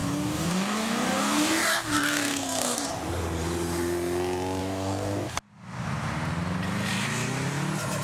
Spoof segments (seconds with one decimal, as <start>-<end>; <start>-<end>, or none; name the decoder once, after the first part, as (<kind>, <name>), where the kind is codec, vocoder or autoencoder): 0.0-2.9 (codec, DAC); 4.6-5.3